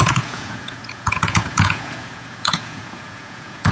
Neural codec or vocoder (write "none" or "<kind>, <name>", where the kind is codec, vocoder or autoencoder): vocoder, Vocos